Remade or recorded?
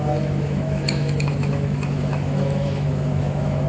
remade